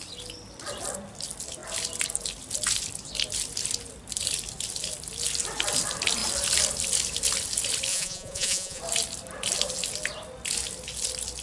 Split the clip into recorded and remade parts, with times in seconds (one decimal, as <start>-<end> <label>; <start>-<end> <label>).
0.0-7.9 recorded; 7.9-8.8 remade; 8.8-11.4 recorded

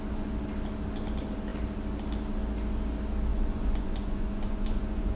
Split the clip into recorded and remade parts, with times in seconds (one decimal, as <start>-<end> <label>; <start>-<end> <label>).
0.0-3.3 recorded; 3.3-5.2 remade

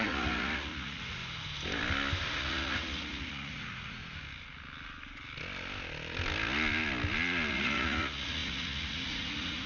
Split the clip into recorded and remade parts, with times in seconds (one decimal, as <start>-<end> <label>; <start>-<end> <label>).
0.0-1.2 remade; 1.2-2.2 recorded; 2.2-4.0 remade; 4.0-7.5 recorded; 7.5-9.7 remade

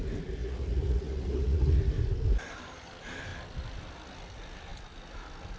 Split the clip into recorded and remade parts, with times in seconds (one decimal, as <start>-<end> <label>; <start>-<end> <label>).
0.0-0.4 recorded; 0.4-1.8 remade; 1.8-5.6 recorded

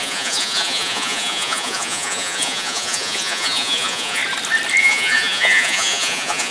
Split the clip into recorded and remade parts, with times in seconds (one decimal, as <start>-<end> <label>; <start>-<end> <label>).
0.0-4.2 remade; 4.2-4.8 recorded; 4.8-6.5 remade

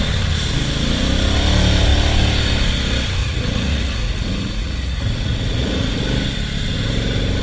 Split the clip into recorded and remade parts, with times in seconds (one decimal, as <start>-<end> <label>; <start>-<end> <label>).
0.0-3.2 recorded; 3.2-6.0 remade; 6.0-7.4 recorded

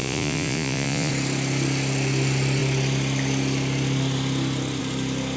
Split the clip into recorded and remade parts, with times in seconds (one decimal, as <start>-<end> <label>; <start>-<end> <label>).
0.0-1.1 remade; 1.1-5.4 recorded